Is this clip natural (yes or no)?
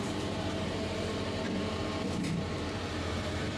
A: no